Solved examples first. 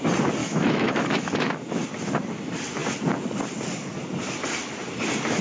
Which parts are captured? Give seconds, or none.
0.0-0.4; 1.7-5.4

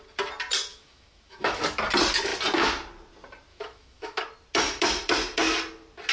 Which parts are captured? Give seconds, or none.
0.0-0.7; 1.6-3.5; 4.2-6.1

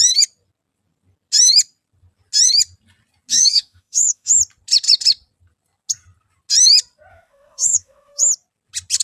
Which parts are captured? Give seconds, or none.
0.0-3.3; 4.3-7.1; 8.2-9.0

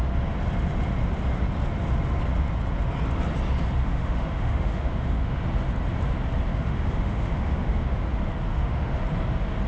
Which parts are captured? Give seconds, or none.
0.0-3.8; 5.4-6.5; 8.0-8.5; 9.0-9.7

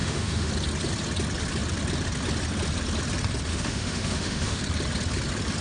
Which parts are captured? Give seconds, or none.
0.5-3.5; 4.6-5.6

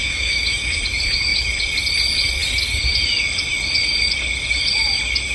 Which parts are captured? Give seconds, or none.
0.8-5.3

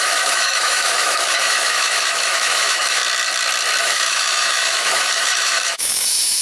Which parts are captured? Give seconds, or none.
3.0-3.8

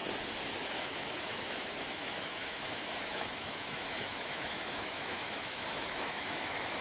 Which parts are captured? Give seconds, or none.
0.0-0.7